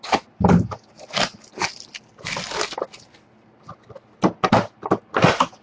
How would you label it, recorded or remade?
recorded